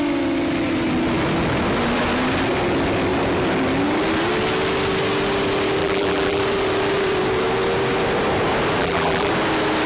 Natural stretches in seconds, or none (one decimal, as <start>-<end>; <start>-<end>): 0.0-5.8; 6.4-8.8; 9.3-9.9